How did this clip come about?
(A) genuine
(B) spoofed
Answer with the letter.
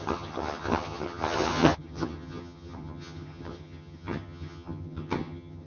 B